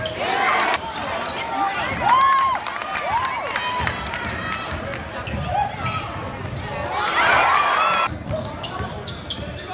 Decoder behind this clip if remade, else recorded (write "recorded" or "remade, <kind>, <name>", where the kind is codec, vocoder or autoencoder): recorded